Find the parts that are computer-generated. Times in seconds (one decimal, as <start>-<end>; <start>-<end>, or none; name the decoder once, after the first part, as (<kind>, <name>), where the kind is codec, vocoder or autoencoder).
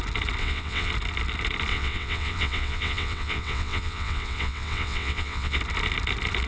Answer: 0.4-0.9 (vocoder, WaveNeXt); 1.7-5.6